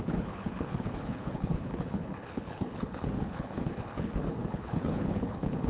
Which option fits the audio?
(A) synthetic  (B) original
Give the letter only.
A